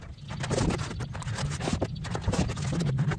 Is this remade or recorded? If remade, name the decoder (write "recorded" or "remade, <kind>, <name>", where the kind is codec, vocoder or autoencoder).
recorded